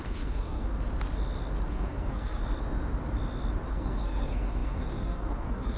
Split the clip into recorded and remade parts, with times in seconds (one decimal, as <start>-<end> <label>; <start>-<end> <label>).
0.0-0.7 remade; 0.7-1.7 recorded; 1.7-2.4 remade; 2.4-3.7 recorded; 3.7-5.8 remade